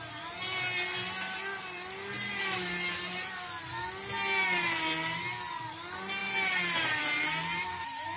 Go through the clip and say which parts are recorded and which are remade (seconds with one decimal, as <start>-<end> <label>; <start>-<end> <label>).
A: 0.0-8.2 recorded